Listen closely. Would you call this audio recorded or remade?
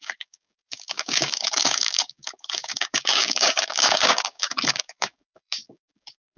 remade